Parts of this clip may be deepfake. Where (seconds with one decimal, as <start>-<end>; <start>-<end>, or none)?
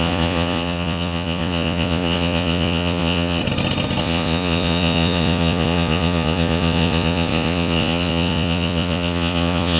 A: 0.0-3.4; 4.0-9.8